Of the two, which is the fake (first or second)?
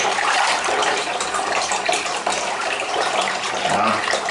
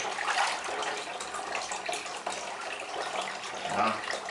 first